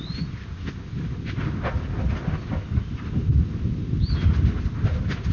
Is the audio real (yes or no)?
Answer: yes